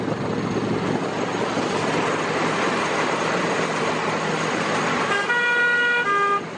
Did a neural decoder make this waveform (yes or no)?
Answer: no